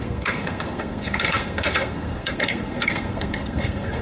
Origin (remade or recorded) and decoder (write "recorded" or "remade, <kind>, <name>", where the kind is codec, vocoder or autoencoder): remade, codec, SNAC